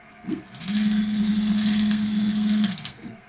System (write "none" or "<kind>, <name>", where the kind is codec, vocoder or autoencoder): codec, SNAC